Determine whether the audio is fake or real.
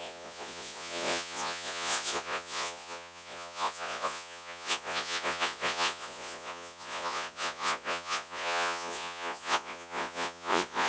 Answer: fake